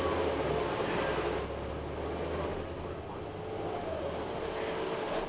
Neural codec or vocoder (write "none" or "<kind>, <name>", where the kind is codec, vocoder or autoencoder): none